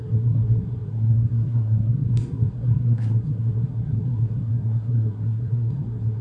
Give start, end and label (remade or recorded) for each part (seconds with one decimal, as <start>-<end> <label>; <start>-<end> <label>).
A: 0.0-6.2 remade